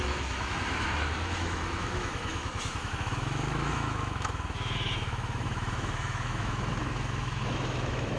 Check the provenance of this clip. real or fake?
fake